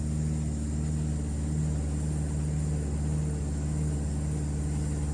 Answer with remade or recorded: recorded